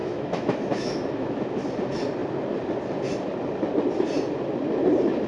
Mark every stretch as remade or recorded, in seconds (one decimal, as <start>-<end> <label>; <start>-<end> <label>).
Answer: 0.0-1.4 remade; 1.4-5.3 recorded